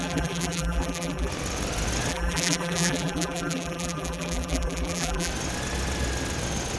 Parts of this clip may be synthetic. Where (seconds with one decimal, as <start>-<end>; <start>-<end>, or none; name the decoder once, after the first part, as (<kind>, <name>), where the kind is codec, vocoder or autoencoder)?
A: 0.0-1.3 (vocoder, BigVGAN v2); 2.1-5.3